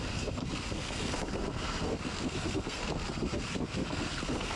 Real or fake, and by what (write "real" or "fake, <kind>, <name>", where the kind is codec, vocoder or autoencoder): fake, codec, SNAC